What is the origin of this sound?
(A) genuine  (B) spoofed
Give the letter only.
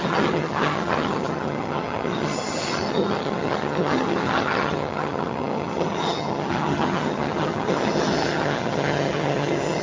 B